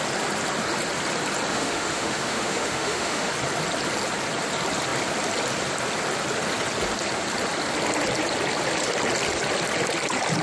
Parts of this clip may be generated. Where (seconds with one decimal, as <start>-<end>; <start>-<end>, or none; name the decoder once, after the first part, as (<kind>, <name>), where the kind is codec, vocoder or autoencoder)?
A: 1.5-3.3 (autoencoder, DAC-VAE)